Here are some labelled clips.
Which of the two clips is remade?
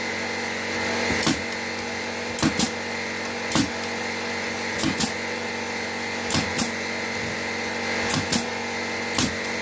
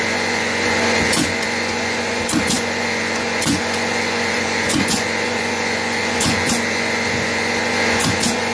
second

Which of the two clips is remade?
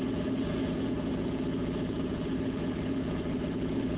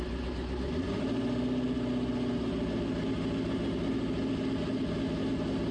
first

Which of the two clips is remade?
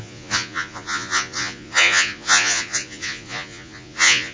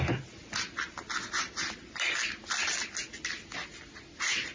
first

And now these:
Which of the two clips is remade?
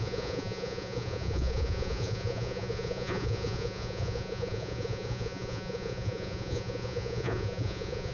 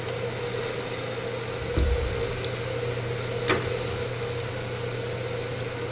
first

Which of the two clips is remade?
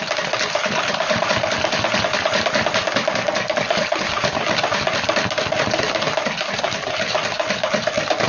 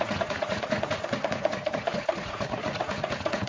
second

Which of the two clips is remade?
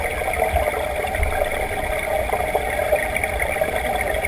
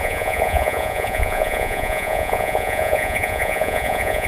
second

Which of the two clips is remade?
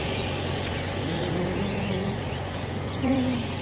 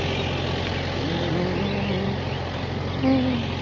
first